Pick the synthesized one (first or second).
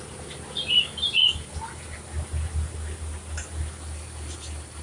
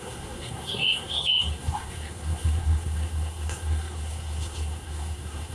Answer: second